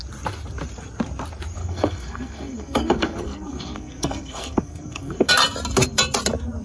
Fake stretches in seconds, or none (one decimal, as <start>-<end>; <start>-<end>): 1.6-5.3